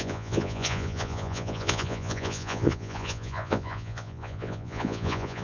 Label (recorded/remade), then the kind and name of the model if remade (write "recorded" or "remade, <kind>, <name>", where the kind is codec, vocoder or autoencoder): remade, vocoder, Vocos